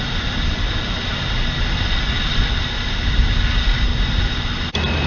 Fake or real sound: real